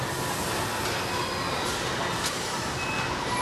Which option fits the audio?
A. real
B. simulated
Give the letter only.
A